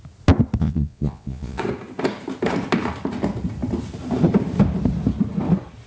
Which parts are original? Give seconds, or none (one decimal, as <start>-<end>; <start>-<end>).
0.0-0.6; 1.6-5.9